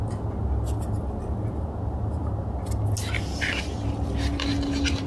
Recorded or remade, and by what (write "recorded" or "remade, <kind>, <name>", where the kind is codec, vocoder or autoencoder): recorded